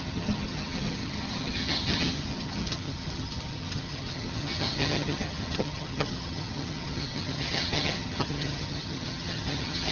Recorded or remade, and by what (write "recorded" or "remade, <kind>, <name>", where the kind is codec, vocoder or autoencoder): remade, vocoder, HiFi-GAN